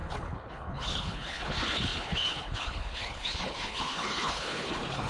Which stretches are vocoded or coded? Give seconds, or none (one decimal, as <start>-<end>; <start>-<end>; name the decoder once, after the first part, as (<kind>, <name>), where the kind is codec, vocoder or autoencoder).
0.0-5.1 (codec, HILCodec)